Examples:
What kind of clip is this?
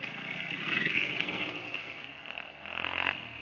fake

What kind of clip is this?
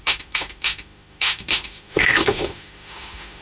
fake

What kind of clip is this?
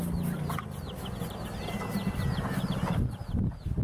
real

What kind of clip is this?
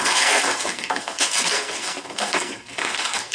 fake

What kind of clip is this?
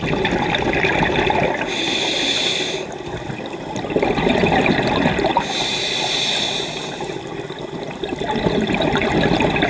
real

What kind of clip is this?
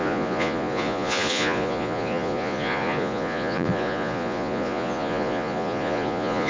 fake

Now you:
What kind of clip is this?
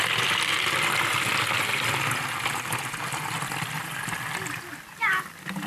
real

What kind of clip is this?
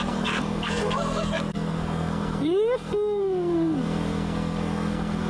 fake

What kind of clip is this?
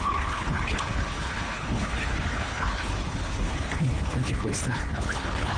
fake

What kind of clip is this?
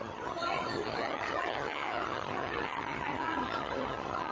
fake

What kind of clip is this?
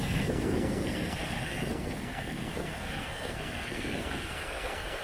fake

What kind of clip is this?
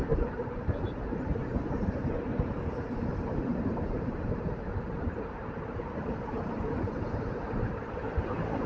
real